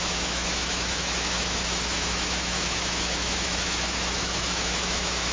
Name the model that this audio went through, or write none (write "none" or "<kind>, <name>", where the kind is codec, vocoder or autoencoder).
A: autoencoder, DAC-VAE